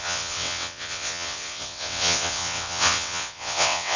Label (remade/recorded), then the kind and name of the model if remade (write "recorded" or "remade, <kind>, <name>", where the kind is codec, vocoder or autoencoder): remade, vocoder, WaveNeXt